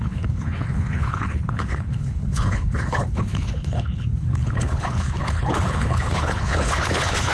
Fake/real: fake